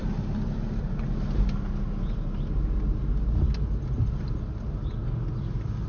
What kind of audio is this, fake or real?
real